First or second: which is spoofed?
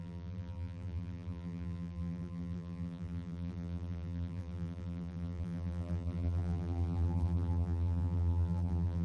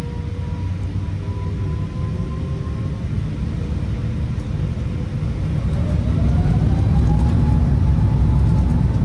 first